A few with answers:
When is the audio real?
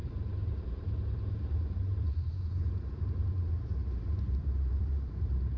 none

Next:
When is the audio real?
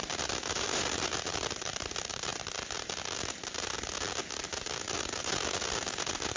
2.3-5.2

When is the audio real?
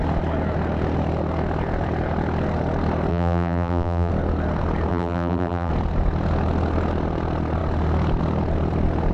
0.0-3.1; 4.1-4.9; 5.7-9.1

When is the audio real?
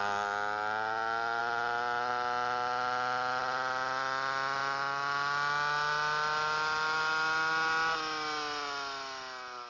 0.0-9.7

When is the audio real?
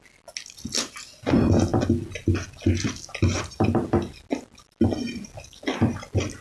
0.0-6.4